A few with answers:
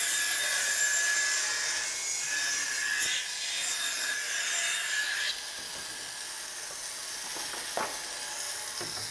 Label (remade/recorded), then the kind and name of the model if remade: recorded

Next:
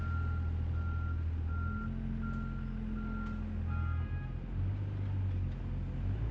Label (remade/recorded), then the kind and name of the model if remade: recorded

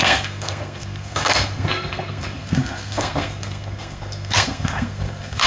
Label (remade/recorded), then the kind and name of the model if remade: remade, codec, SNAC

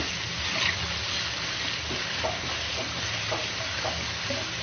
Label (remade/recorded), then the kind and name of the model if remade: recorded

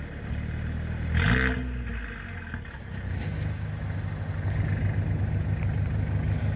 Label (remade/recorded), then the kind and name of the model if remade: recorded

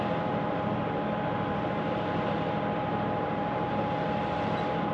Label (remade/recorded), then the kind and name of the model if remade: remade, vocoder, BigVGAN v2